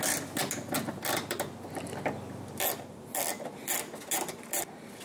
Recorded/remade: recorded